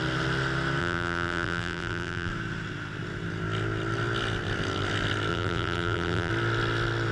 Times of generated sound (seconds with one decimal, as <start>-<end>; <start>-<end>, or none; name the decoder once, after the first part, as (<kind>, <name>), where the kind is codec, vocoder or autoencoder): 0.8-2.3 (vocoder, BigVGAN v2); 5.3-6.3